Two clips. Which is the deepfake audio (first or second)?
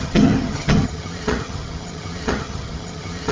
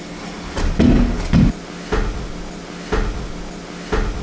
first